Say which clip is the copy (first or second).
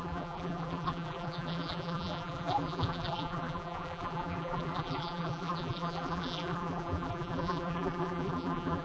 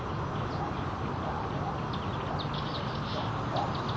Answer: first